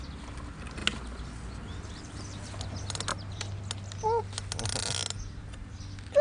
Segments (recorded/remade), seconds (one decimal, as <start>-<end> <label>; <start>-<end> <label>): 0.0-6.2 recorded